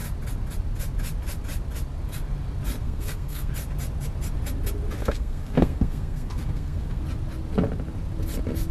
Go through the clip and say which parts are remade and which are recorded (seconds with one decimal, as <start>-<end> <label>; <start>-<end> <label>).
0.0-2.8 recorded; 2.8-3.5 remade; 3.5-5.0 recorded; 5.0-7.0 remade; 7.0-8.7 recorded